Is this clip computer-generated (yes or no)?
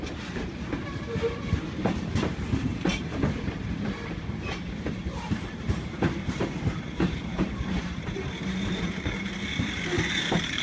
yes